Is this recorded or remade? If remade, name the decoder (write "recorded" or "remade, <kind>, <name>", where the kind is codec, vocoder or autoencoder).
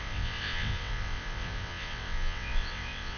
remade, vocoder, WaveNeXt